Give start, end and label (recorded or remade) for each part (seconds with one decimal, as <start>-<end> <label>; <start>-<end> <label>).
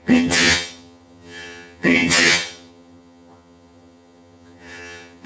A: 0.0-5.3 remade